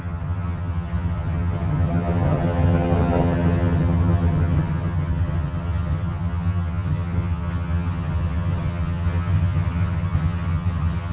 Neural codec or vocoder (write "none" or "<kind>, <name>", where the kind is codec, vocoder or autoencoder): vocoder, HiFi-GAN